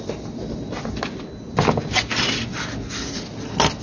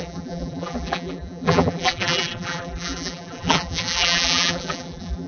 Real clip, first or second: first